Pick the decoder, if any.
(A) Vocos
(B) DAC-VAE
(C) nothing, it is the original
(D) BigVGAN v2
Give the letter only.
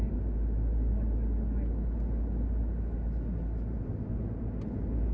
C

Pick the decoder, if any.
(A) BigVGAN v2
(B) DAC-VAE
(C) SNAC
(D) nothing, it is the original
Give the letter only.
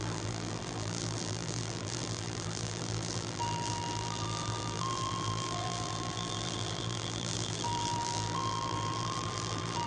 A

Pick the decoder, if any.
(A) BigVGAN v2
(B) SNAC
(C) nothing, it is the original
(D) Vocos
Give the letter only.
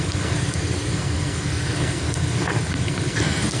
B